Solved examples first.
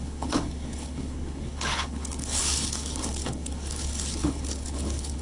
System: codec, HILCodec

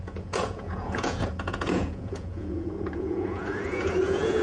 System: vocoder, Vocos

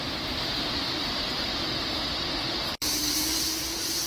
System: vocoder, BigVGAN v2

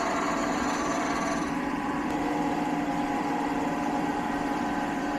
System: vocoder, BigVGAN v2